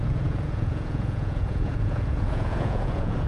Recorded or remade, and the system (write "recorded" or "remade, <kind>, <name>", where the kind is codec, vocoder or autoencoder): remade, vocoder, Vocos